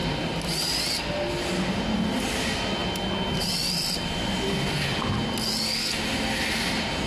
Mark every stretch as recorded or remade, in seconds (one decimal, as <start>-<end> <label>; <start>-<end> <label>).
0.0-7.1 recorded